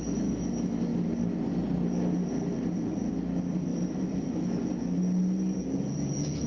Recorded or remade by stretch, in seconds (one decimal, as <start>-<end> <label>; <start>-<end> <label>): 0.0-5.6 recorded; 5.6-6.5 remade